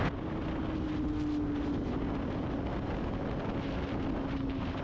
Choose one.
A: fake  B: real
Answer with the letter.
B